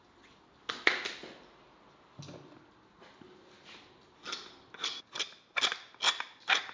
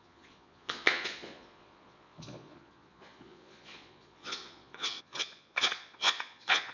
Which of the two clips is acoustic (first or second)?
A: first